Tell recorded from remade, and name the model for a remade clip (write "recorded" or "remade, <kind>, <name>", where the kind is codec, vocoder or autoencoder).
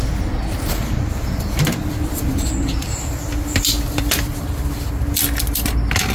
recorded